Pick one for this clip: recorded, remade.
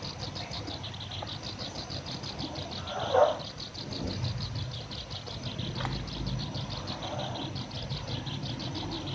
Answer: recorded